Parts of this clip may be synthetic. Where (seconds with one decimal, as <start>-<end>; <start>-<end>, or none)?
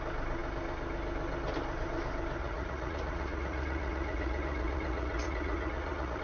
2.4-6.2